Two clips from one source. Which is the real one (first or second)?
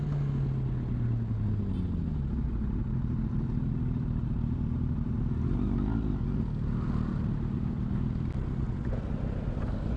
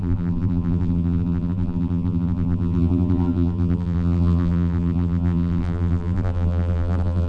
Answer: first